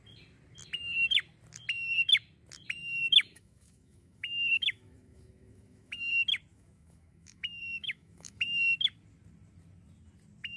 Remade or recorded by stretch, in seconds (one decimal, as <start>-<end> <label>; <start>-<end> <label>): 0.0-2.8 recorded; 2.8-6.0 remade; 6.0-6.5 recorded; 6.5-8.6 remade; 8.6-10.6 recorded